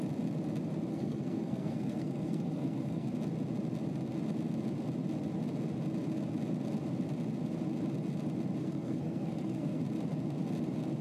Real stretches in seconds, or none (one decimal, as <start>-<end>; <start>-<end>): 0.0-0.9; 3.1-8.6; 9.8-11.0